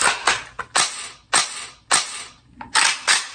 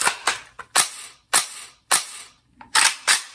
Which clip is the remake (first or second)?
second